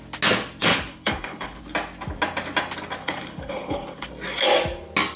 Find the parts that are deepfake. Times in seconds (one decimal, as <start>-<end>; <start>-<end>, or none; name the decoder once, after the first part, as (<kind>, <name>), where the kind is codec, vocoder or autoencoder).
0.6-1.6 (codec, HILCodec); 3.0-4.1